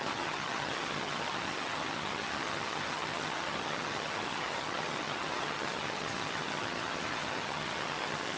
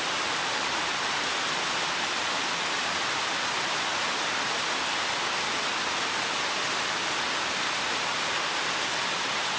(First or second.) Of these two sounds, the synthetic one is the first